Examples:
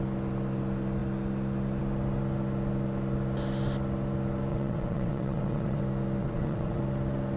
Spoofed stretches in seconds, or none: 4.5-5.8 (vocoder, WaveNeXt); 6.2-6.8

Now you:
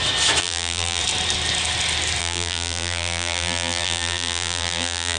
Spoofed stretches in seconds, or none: 0.4-1.0 (vocoder, BigVGAN v2); 2.2-5.2

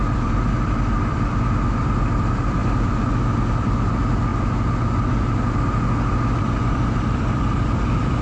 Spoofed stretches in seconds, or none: 0.0-2.6 (vocoder, BigVGAN v2); 3.5-4.3; 6.4-8.2

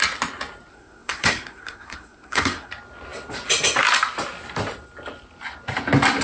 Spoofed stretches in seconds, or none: 0.7-2.7 (codec, SNAC)